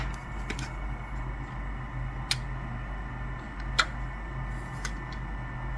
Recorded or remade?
recorded